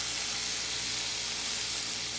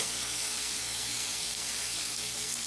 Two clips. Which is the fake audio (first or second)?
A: second